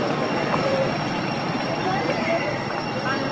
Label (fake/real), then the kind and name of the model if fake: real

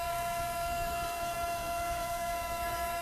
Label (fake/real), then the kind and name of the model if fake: fake, codec, SNAC